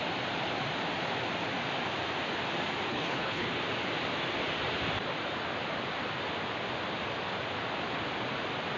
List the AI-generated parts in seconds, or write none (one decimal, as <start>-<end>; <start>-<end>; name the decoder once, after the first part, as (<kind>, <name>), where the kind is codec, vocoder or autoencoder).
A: 2.9-3.6 (codec, HILCodec)